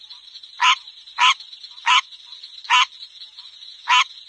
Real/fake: real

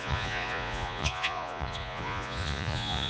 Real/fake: fake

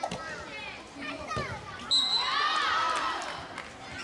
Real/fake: real